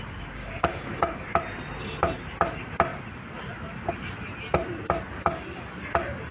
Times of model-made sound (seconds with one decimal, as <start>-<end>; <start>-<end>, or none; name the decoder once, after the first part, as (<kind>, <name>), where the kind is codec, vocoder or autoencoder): 0.4-1.2 (codec, DAC)